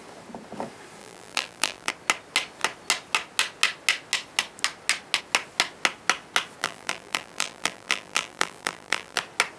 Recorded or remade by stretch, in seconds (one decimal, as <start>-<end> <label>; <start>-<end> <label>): 0.0-1.0 recorded; 1.0-1.9 remade; 1.9-6.6 recorded; 6.6-9.2 remade; 9.2-9.6 recorded